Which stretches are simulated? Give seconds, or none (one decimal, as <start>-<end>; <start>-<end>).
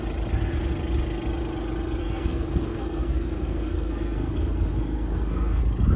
2.0-5.6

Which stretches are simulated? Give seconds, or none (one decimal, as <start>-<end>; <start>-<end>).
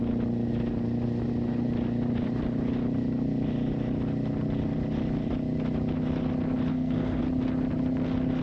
6.7-7.2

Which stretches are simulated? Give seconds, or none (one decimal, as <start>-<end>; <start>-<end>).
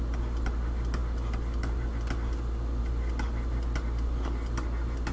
none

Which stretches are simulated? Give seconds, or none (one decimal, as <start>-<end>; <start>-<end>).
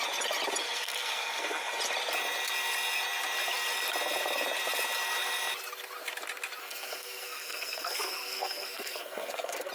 0.6-1.8; 6.6-9.7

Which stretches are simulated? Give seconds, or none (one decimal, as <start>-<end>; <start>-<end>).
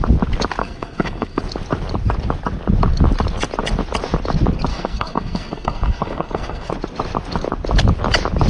0.6-1.4; 4.7-6.7